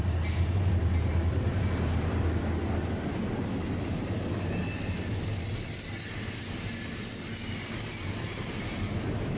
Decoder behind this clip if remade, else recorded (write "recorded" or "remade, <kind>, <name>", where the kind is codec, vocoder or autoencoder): recorded